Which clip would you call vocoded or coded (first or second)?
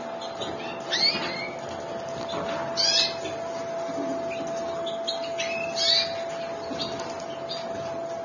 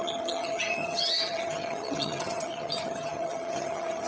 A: second